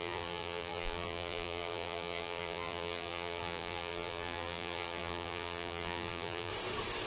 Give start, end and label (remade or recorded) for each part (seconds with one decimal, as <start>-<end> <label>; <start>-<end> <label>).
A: 0.0-6.5 remade; 6.5-7.1 recorded